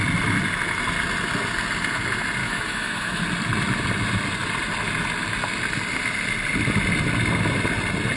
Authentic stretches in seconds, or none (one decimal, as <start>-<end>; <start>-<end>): 0.0-2.4; 3.2-8.2